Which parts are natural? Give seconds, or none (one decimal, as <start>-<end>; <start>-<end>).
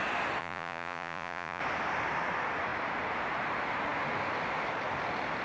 0.0-0.4; 1.6-5.4